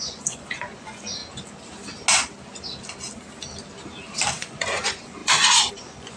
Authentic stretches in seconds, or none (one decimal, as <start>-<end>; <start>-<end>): 1.2-4.4